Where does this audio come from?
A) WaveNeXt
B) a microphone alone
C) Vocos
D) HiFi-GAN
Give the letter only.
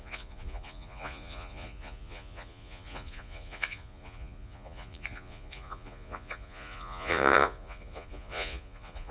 C